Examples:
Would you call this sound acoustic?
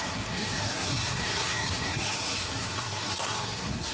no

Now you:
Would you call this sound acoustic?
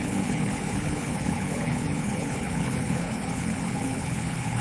no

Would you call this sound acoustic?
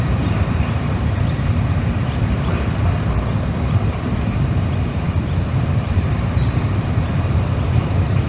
no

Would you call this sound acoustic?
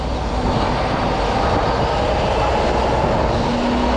yes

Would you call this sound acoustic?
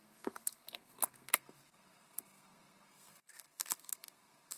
no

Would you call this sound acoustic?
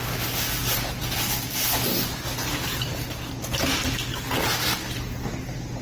yes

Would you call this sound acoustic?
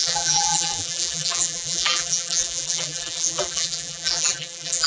no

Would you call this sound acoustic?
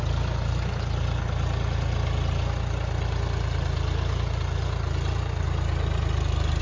yes